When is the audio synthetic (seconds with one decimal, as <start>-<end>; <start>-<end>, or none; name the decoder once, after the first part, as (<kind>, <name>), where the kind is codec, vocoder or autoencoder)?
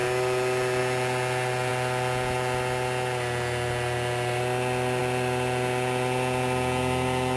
none